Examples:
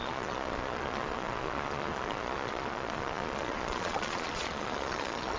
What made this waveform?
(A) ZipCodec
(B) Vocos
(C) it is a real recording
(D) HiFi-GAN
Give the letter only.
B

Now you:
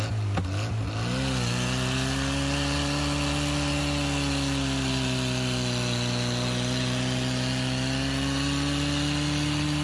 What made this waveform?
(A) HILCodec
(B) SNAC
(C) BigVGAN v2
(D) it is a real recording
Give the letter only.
D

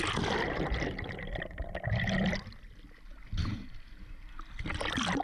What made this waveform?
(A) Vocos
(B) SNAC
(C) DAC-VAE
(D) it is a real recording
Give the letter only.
D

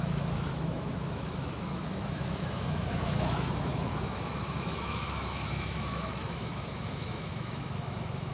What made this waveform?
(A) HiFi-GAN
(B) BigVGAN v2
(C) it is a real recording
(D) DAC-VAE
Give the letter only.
D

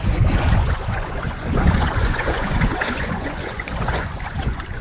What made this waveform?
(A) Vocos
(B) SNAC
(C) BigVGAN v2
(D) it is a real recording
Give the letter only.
A